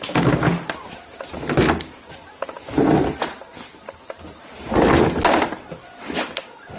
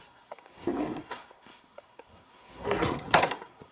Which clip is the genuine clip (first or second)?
first